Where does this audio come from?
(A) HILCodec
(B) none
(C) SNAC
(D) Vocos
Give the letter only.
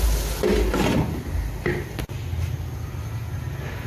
B